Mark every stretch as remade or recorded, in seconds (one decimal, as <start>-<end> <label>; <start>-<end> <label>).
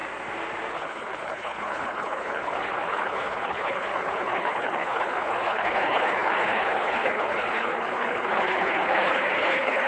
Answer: 0.0-0.7 recorded; 0.7-9.9 remade